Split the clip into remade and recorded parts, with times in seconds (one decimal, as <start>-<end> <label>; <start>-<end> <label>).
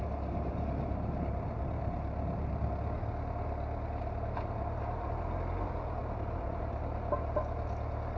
0.0-8.2 recorded